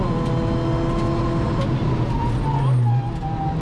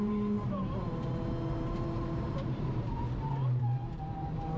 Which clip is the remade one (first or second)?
second